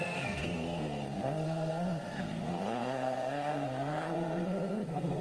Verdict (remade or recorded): remade